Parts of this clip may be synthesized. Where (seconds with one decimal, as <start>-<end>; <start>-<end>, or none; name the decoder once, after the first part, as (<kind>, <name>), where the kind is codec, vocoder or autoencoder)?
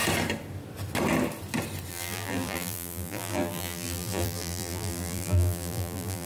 1.9-6.3 (vocoder, BigVGAN v2)